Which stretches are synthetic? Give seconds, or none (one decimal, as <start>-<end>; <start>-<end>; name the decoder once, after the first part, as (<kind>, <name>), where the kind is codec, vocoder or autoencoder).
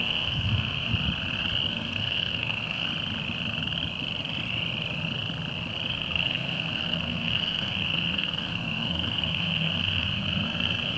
0.0-0.9 (codec, SNAC); 1.7-2.9; 5.9-11.0